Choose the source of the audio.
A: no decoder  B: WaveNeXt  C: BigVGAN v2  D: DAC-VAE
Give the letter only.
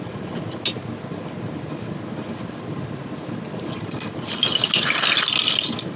A